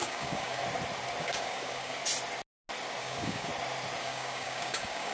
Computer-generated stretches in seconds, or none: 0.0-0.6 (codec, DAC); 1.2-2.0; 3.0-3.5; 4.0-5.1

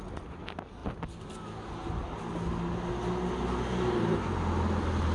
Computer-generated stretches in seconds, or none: none